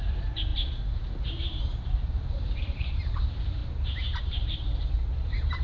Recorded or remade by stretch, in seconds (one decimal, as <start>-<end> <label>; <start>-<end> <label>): 0.0-3.6 remade; 3.6-4.2 recorded; 4.2-5.6 remade

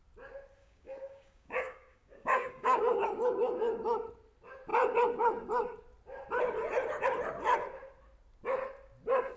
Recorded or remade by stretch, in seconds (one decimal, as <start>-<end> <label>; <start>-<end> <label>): 0.0-0.6 recorded; 0.6-2.8 remade; 2.8-9.4 recorded

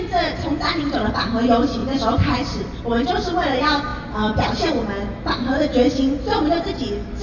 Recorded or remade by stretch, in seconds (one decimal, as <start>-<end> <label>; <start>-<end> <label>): 0.0-1.8 recorded; 1.8-2.8 remade; 2.8-3.9 recorded; 3.9-4.8 remade; 4.8-7.2 recorded